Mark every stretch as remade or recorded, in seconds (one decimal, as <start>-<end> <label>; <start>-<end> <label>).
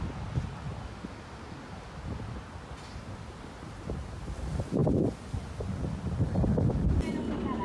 0.0-7.6 recorded